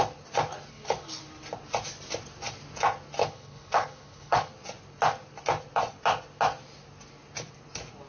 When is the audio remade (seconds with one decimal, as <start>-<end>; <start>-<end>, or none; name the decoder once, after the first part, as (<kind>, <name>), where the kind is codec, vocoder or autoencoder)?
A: 0.7-1.2 (codec, HILCodec); 3.2-4.5